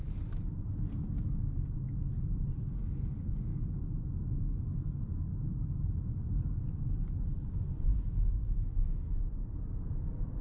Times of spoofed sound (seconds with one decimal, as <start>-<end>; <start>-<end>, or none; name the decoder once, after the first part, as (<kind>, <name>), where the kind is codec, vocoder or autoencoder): 0.0-3.5 (vocoder, BigVGAN v2); 4.5-10.4